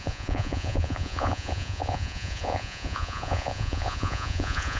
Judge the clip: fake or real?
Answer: fake